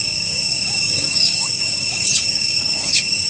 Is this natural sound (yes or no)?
no